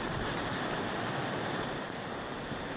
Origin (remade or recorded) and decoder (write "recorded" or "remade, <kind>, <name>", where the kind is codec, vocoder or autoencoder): remade, vocoder, BigVGAN v2